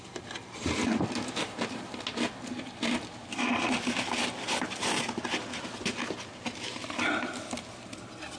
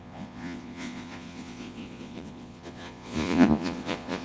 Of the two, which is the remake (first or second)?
second